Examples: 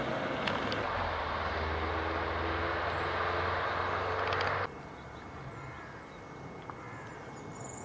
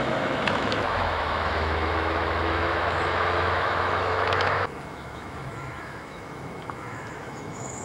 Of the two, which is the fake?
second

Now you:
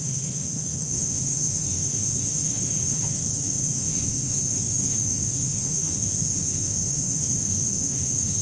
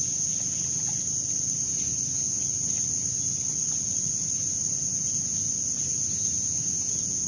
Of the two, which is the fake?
first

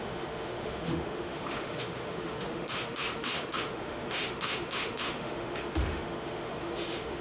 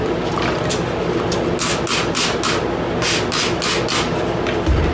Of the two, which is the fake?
first